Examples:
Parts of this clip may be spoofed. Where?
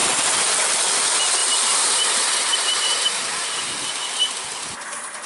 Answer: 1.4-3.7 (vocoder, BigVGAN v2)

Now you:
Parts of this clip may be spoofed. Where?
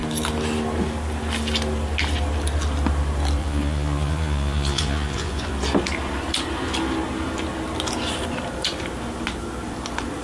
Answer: 3.4-5.5 (vocoder, Vocos)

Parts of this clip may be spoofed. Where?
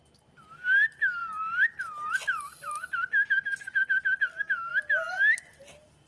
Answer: none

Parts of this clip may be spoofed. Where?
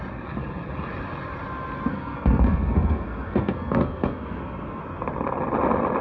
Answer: 1.9-4.8 (codec, SNAC)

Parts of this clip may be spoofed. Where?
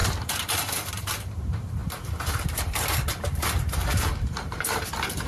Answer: 0.0-5.3 (vocoder, BigVGAN v2)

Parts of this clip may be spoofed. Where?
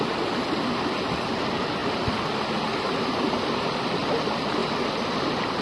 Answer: none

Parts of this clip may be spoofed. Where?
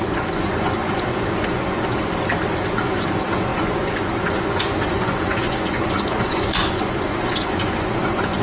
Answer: 0.0-2.0 (vocoder, Vocos); 2.8-8.4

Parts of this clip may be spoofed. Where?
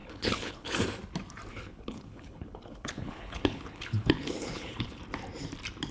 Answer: 0.0-0.7 (codec, HILCodec); 1.5-5.0